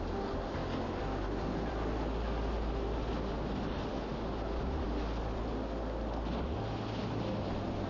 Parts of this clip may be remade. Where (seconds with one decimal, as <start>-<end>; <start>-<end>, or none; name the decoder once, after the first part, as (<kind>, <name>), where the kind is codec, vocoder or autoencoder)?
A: none